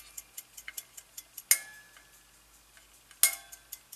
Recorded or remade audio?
recorded